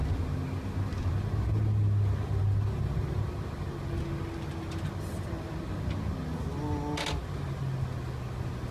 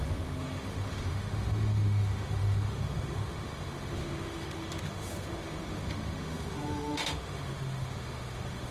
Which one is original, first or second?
first